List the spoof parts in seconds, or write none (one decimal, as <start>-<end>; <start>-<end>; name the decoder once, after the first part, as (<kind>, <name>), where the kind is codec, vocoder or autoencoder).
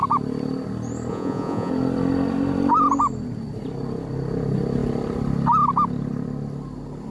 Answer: 1.1-1.7 (vocoder, Vocos)